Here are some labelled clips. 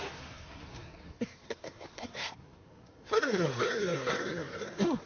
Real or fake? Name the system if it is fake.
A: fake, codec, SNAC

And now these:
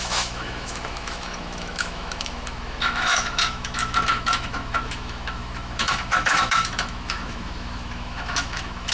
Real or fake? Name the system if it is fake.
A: fake, autoencoder, DAC-VAE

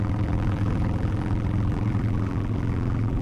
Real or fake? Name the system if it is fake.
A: fake, vocoder, BigVGAN v2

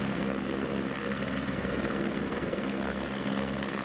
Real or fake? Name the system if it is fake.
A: fake, codec, SNAC